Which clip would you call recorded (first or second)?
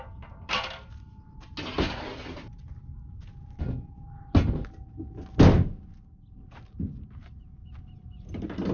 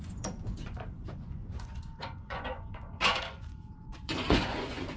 first